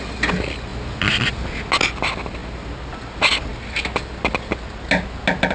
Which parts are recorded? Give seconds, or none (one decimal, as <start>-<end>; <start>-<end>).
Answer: 0.0-5.5